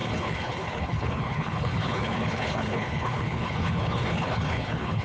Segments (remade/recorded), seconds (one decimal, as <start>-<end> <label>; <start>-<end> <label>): 0.0-5.0 remade